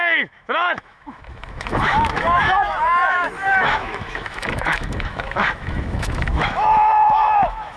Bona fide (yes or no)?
no